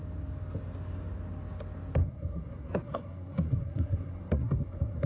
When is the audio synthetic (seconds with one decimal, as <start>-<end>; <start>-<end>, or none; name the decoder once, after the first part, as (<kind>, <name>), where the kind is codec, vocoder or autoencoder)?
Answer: 2.0-5.1 (codec, SNAC)